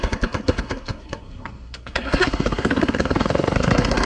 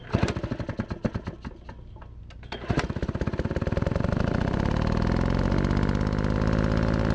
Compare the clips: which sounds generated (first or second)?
first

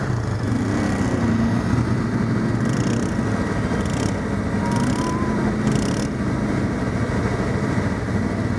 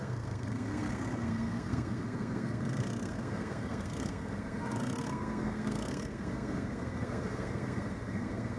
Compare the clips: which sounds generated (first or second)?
second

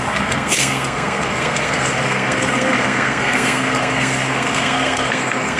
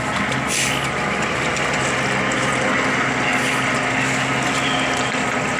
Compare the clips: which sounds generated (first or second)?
first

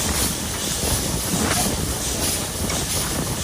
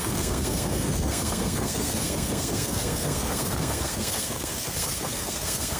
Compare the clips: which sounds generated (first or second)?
second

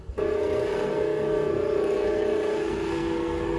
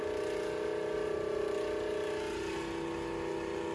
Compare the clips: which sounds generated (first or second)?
first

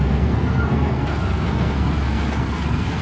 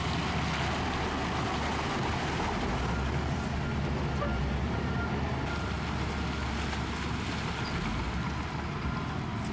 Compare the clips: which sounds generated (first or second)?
first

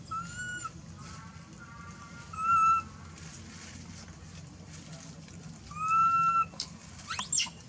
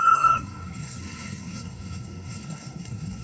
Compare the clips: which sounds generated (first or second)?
second